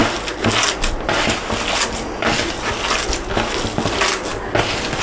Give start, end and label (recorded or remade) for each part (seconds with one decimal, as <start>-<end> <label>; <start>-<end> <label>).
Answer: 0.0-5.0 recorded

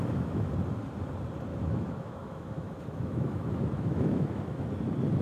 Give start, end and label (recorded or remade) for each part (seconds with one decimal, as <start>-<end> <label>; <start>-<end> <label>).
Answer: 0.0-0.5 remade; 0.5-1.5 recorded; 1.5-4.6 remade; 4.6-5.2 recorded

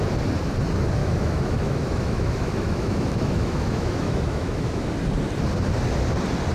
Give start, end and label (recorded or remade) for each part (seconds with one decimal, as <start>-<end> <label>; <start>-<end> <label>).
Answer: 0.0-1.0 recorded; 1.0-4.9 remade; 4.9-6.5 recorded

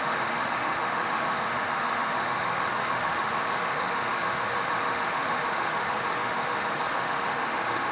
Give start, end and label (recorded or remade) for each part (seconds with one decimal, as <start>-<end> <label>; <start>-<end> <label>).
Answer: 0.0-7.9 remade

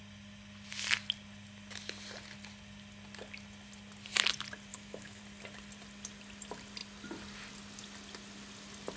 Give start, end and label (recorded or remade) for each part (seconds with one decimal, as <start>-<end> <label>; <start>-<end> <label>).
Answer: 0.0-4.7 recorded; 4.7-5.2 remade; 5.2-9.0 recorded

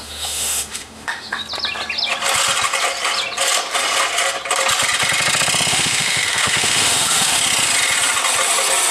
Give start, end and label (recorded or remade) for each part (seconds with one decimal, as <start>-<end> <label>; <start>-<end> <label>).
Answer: 0.0-1.4 remade; 1.4-5.7 recorded; 5.7-7.4 remade; 7.4-8.9 recorded

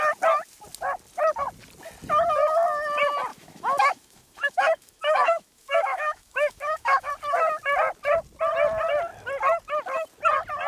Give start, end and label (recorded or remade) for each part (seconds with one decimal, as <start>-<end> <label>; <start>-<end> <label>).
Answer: 0.0-3.3 recorded; 3.3-7.1 remade; 7.1-10.7 recorded

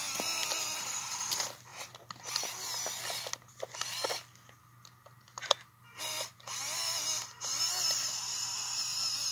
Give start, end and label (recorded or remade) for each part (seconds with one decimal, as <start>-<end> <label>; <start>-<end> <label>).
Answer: 0.0-9.3 recorded